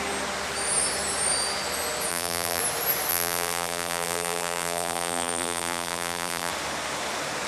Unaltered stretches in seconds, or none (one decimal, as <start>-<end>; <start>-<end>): 0.0-2.1; 2.6-3.1; 6.5-7.5

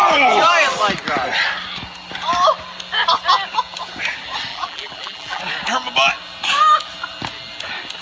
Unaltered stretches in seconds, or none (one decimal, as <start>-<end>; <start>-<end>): 0.0-4.5; 5.4-8.0

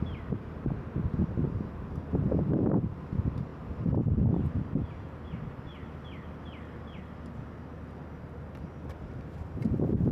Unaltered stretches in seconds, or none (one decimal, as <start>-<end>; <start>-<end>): 0.0-10.1

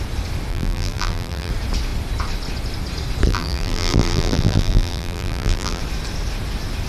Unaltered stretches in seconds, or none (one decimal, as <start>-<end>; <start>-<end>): 0.0-0.5; 1.5-3.3; 5.8-6.9

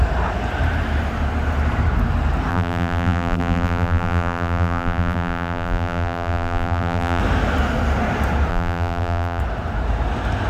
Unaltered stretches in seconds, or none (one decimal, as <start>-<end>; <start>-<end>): 0.0-2.5; 7.2-8.5; 9.4-10.5

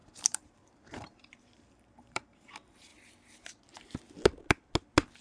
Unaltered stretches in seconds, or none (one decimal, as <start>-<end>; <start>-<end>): 2.9-5.2